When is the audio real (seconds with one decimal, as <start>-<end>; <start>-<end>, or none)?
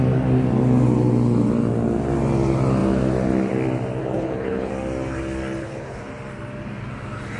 0.0-4.0; 4.7-5.6; 6.1-7.4